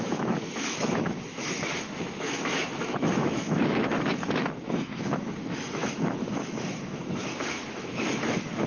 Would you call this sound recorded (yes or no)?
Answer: no